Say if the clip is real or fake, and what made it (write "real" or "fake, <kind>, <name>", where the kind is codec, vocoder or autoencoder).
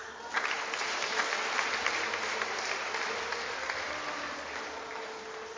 real